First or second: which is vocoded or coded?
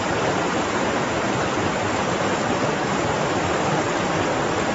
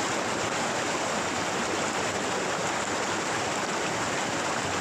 first